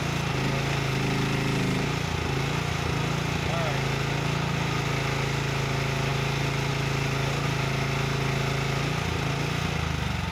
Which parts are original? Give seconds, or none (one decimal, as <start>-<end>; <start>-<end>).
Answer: 0.0-10.3